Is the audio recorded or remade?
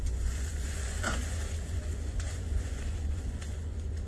remade